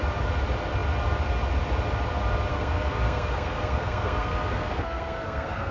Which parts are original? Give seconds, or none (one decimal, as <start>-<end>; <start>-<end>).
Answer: 0.0-2.5